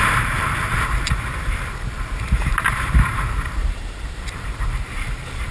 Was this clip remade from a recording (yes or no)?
yes